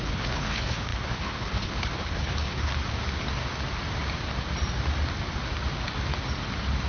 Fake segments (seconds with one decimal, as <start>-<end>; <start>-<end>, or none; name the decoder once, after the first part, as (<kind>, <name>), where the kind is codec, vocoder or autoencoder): 0.0-2.7 (codec, HILCodec)